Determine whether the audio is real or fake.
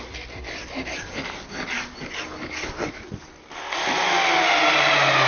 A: real